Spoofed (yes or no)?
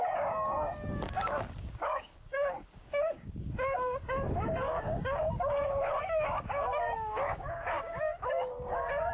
yes